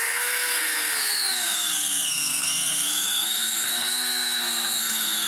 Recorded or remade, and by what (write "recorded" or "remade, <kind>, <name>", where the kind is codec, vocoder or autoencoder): remade, codec, SNAC